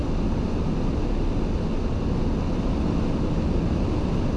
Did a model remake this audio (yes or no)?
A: no